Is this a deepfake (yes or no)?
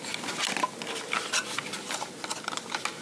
no